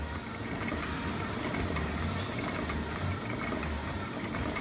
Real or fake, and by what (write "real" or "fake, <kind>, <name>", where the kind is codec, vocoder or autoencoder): real